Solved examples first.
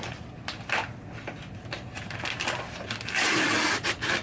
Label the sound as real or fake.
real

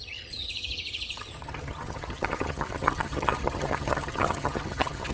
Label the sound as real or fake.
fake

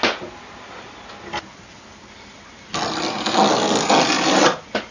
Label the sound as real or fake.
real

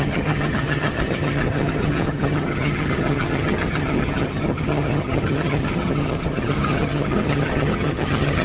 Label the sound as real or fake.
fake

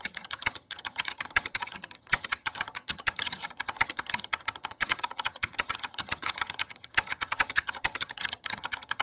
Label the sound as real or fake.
fake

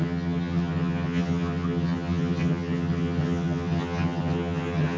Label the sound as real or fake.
fake